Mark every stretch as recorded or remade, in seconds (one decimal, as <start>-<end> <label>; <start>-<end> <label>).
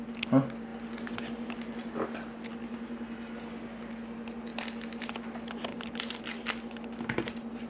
0.0-5.7 recorded; 5.7-6.2 remade; 6.2-7.7 recorded